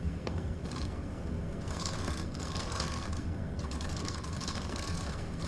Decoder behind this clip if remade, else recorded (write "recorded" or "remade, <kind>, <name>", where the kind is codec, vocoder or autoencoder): remade, codec, SNAC